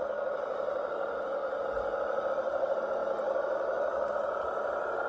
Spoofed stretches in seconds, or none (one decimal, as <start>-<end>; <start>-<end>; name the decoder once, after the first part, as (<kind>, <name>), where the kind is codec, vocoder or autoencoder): none